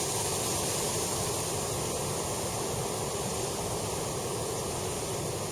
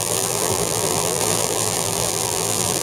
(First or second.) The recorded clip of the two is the first